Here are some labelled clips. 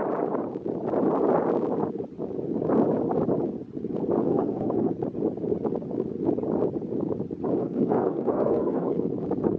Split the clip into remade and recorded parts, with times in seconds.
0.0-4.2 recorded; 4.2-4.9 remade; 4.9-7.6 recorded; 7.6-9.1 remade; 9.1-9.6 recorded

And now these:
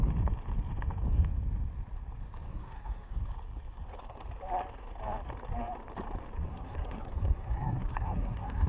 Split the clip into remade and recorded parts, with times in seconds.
0.0-2.5 recorded; 2.5-3.2 remade; 3.2-6.5 recorded; 6.5-8.7 remade